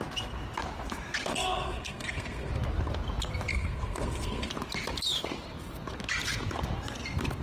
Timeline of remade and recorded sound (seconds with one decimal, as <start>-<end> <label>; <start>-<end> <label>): 0.0-1.3 recorded; 1.3-2.5 remade; 2.5-3.5 recorded; 3.5-4.5 remade; 4.5-7.4 recorded